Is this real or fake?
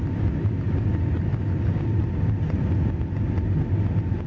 real